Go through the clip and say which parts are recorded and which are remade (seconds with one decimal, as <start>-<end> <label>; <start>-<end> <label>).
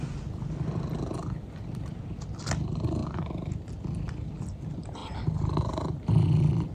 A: 0.0-3.0 recorded; 3.0-3.7 remade; 3.7-5.0 recorded; 5.0-5.7 remade; 5.7-6.7 recorded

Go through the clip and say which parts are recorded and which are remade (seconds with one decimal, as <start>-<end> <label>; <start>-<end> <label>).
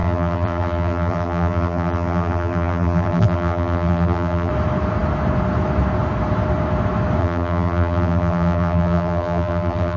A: 0.0-4.5 remade; 4.5-7.2 recorded; 7.2-10.0 remade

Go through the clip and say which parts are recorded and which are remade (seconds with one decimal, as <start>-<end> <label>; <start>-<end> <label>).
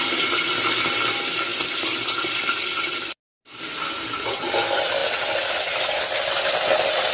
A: 0.0-1.5 recorded; 1.5-2.6 remade; 2.6-5.0 recorded; 5.0-7.1 remade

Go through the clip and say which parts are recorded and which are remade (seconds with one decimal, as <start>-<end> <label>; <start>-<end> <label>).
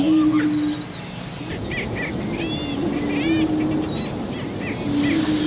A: 0.0-5.5 recorded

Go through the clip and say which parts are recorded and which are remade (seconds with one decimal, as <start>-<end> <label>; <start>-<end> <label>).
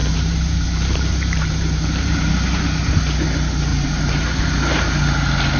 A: 0.0-2.3 remade; 2.3-3.7 recorded; 3.7-5.0 remade; 5.0-5.6 recorded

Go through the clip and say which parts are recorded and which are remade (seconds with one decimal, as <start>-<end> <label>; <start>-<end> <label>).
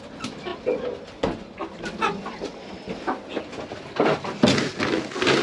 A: 0.0-5.4 recorded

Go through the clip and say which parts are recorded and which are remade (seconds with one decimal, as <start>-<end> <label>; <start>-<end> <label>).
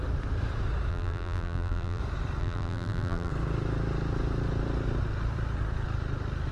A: 0.0-0.9 recorded; 0.9-2.0 remade; 2.0-2.4 recorded; 2.4-3.3 remade; 3.3-6.5 recorded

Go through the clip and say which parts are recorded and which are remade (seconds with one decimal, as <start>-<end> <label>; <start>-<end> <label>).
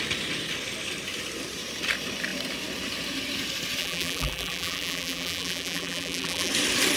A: 0.0-3.8 recorded; 3.8-6.5 remade; 6.5-7.0 recorded